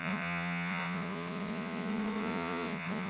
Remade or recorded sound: remade